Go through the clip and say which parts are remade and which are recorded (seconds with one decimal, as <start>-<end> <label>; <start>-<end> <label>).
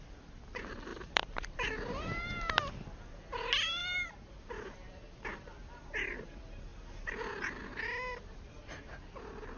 0.0-0.9 recorded; 0.9-2.5 remade; 2.5-3.8 recorded; 3.8-4.4 remade; 4.4-6.7 recorded; 6.7-7.3 remade; 7.3-9.6 recorded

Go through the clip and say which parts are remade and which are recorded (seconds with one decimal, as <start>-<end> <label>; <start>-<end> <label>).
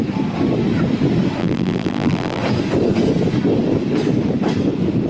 0.0-1.4 recorded; 1.4-2.4 remade; 2.4-5.1 recorded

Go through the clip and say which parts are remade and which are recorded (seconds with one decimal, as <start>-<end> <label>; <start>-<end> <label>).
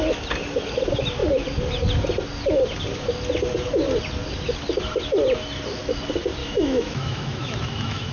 0.0-6.4 recorded; 6.4-8.1 remade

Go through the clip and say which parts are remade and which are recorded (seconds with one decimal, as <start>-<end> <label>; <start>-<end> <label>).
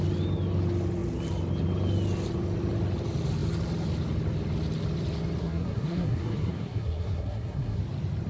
0.0-5.4 recorded; 5.4-7.8 remade; 7.8-8.3 recorded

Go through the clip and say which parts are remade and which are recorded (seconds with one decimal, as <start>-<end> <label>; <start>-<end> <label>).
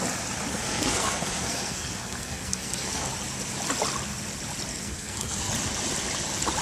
0.0-0.5 recorded; 0.5-3.1 remade; 3.1-4.7 recorded; 4.7-5.5 remade; 5.5-6.6 recorded